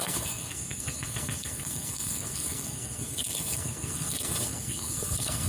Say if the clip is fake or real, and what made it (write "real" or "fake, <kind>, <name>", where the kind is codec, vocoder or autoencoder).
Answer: fake, codec, SNAC